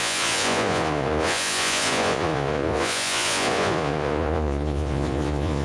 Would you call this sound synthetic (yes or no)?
yes